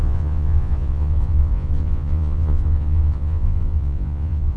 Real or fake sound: fake